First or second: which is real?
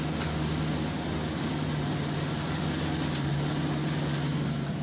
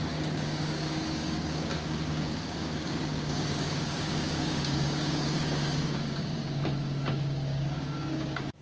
first